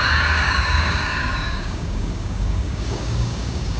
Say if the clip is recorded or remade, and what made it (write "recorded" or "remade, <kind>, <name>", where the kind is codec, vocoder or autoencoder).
remade, codec, DAC